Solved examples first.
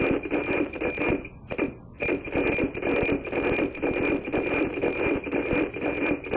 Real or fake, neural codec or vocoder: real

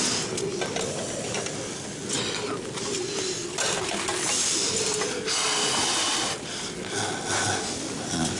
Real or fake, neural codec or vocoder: real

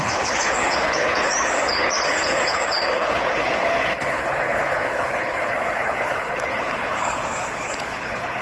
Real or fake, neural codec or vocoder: fake, codec, HILCodec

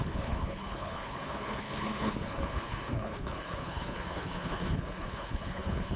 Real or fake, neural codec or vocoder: fake, codec, HILCodec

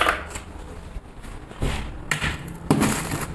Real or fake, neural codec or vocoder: real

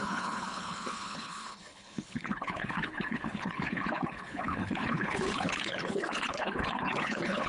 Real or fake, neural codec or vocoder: fake, codec, HILCodec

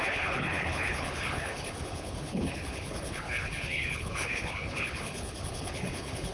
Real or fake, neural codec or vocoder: fake, codec, HILCodec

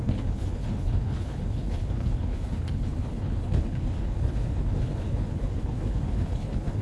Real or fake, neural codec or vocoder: fake, codec, HILCodec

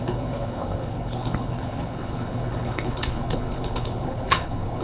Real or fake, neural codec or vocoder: fake, codec, HILCodec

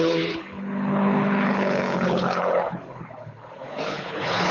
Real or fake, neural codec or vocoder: fake, codec, HILCodec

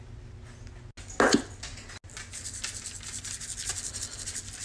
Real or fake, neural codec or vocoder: real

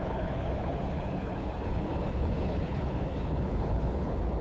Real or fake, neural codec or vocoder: fake, codec, HILCodec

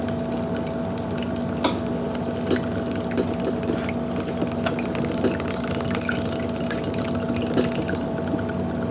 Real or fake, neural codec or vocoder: real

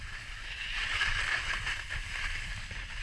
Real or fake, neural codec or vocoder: real